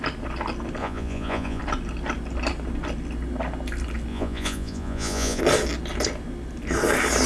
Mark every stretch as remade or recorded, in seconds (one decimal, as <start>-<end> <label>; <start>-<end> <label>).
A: 0.0-0.8 recorded; 0.8-1.6 remade; 1.6-4.1 recorded; 4.1-5.4 remade; 5.4-7.3 recorded